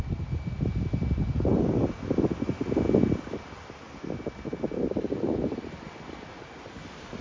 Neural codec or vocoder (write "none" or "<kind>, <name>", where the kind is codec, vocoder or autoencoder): none